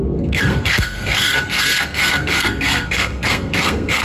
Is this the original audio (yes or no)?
no